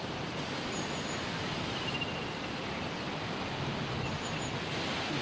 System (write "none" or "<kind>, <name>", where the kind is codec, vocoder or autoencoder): none